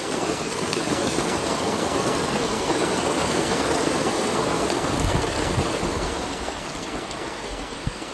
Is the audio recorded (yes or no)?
no